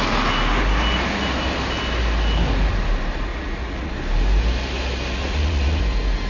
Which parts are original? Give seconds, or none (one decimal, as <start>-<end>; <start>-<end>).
0.0-3.3; 3.9-5.2; 5.8-6.3